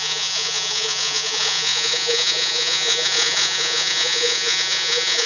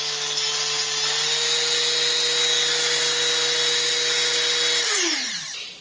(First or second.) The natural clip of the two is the second